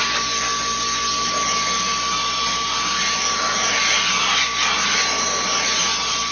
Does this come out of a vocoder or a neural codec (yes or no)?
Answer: no